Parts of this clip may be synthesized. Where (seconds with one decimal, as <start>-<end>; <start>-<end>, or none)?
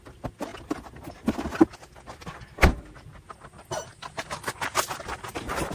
none